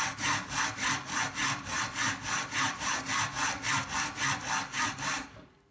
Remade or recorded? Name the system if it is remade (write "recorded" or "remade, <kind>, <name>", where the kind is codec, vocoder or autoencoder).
recorded